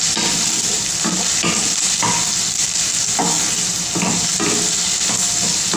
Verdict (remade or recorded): recorded